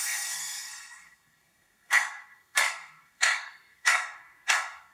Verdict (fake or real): fake